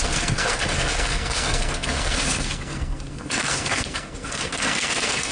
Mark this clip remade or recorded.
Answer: remade